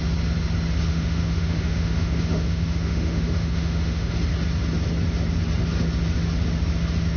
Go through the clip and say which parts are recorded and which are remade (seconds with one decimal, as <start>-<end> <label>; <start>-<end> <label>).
0.0-0.9 recorded; 0.9-4.1 remade; 4.1-7.2 recorded

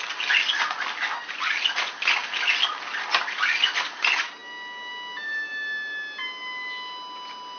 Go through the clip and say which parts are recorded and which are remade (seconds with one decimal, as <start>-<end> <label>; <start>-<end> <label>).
0.0-7.6 recorded

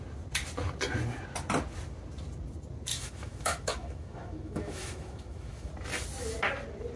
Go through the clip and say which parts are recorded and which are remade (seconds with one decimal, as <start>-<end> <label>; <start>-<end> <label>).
0.0-2.9 recorded; 2.9-5.7 remade; 5.7-7.0 recorded

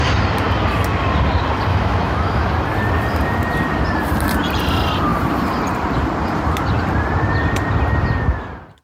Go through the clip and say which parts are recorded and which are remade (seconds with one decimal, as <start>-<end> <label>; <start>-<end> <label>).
0.0-1.7 recorded; 1.7-2.4 remade; 2.4-8.8 recorded